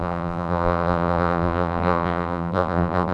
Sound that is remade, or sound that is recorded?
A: remade